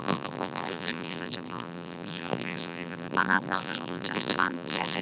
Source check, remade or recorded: remade